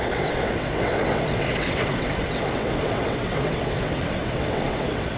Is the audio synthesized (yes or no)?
yes